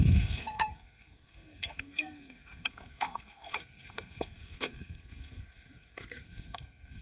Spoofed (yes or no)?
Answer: yes